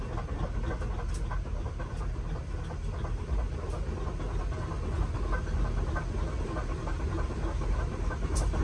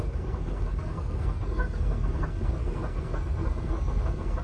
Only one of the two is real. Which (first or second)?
first